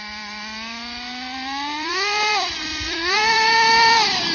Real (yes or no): no